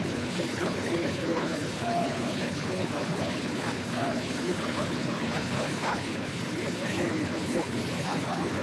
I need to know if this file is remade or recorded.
remade